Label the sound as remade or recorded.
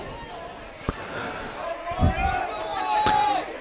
recorded